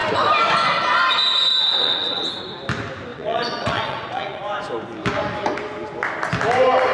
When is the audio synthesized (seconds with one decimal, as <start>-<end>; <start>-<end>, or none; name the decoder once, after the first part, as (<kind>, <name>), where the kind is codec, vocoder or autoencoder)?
1.7-2.3 (vocoder, WaveNeXt); 3.1-4.4